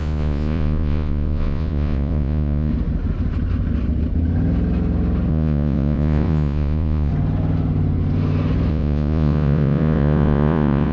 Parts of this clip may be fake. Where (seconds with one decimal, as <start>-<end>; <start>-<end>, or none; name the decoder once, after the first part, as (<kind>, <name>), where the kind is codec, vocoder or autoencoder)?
0.0-2.7 (vocoder, Vocos); 5.3-7.1; 8.7-10.9